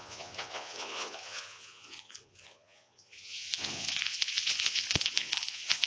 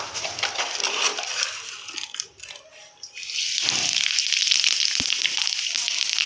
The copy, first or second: first